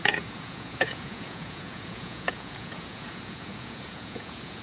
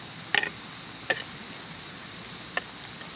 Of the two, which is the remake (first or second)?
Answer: first